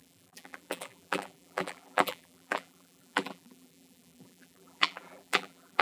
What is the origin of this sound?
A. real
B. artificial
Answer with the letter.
B